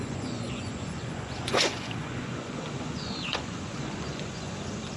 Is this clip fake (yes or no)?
yes